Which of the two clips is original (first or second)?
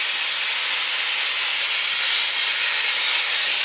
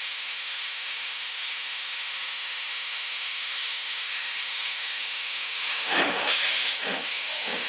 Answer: first